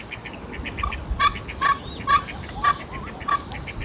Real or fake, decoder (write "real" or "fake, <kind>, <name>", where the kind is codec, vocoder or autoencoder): real